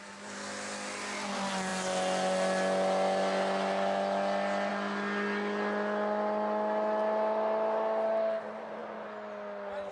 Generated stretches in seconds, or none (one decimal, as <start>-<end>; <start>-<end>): none